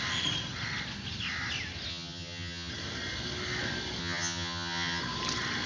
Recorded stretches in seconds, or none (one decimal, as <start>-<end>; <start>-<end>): 0.0-1.9; 2.7-4.0; 5.0-5.7